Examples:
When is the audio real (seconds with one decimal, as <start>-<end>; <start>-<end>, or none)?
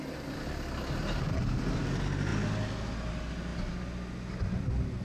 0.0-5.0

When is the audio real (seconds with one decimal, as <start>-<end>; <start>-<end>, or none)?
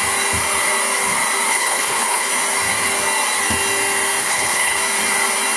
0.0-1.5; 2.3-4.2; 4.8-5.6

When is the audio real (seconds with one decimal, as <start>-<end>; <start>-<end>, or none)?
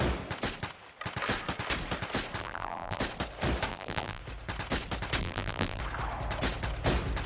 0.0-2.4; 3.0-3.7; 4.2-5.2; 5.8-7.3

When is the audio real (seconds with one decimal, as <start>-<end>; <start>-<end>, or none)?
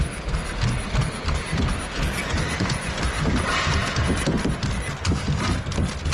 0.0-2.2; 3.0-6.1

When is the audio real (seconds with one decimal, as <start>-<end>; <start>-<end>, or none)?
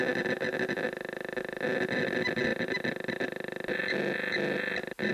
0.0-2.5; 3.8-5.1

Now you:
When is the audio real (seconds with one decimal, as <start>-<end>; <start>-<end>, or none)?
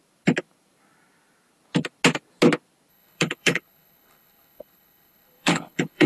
0.0-2.9